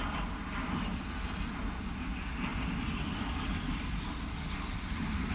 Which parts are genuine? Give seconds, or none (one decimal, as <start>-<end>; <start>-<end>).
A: 0.0-5.3